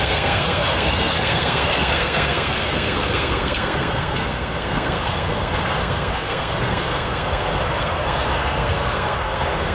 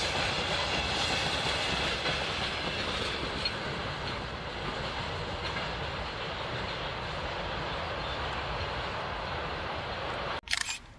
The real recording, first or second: second